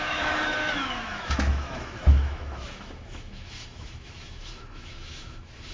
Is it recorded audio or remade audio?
remade